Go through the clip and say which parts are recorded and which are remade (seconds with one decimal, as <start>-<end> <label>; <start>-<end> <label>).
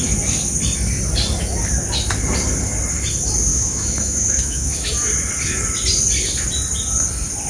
0.0-3.5 recorded; 3.5-4.9 remade; 4.9-7.5 recorded